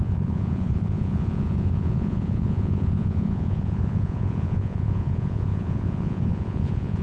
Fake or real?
fake